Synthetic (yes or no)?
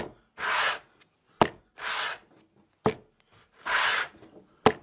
no